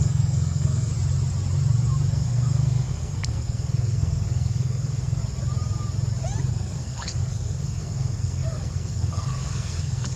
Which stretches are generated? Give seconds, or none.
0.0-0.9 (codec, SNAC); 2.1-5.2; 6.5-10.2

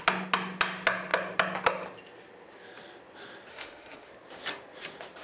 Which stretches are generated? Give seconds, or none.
3.5-4.1 (autoencoder, DAC-VAE)

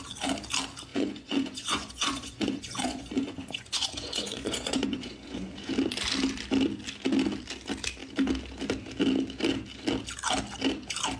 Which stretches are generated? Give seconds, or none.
0.9-5.7 (vocoder, Vocos)

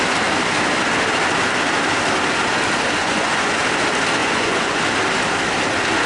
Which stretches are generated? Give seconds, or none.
3.0-3.6 (vocoder, Vocos); 4.2-4.8

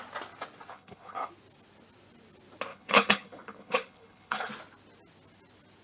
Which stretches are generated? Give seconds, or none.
0.7-1.3 (codec, HILCodec); 2.7-4.5